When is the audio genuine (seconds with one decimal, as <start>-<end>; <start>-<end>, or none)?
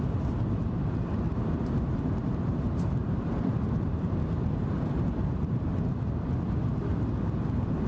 0.0-1.3; 5.9-7.9